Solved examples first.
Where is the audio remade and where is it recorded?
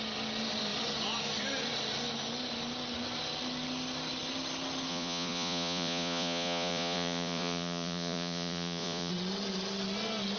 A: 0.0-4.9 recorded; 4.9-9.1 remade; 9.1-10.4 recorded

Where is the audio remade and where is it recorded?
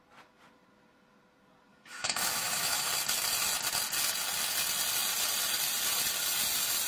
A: 0.0-1.7 recorded; 1.7-2.9 remade; 2.9-6.9 recorded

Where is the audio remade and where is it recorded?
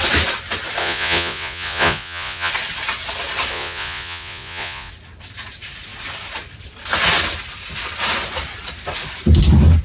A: 0.0-0.8 recorded; 0.8-2.5 remade; 2.5-3.5 recorded; 3.5-4.9 remade; 4.9-9.8 recorded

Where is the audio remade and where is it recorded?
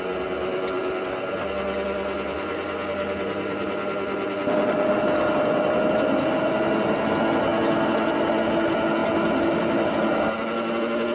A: 0.0-11.1 recorded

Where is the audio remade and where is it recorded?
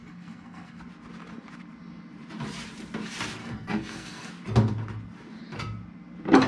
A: 0.0-0.8 remade; 0.8-3.4 recorded; 3.4-4.3 remade; 4.3-6.5 recorded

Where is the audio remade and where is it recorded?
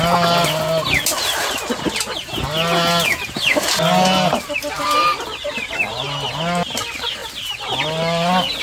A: 0.0-8.6 recorded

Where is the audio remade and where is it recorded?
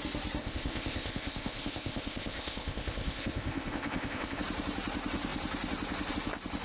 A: 0.0-0.4 recorded; 0.4-4.4 remade; 4.4-6.6 recorded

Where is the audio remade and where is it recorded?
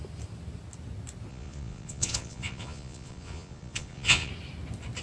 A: 0.0-1.3 recorded; 1.3-4.3 remade; 4.3-5.0 recorded